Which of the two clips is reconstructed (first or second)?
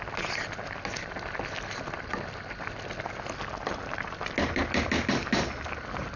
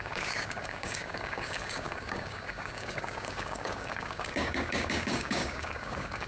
second